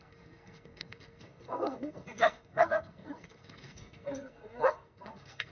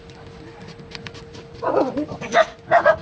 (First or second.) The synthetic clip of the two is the first